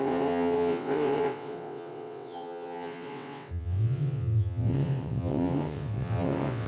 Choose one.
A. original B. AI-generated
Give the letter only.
B